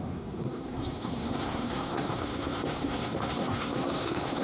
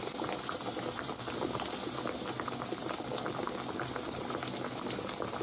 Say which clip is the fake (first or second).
first